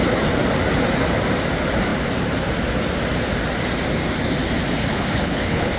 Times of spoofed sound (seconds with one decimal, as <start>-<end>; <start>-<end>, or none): 4.9-5.8